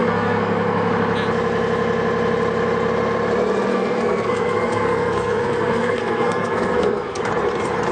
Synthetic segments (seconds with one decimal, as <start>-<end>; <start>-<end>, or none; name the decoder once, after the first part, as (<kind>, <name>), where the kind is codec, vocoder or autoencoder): 0.0-0.9 (codec, SNAC); 3.7-7.2